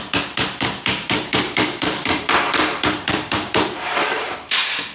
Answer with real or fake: fake